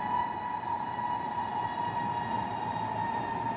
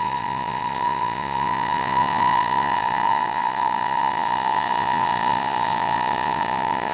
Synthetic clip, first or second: second